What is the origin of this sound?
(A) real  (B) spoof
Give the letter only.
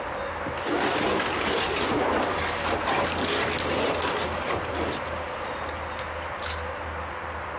A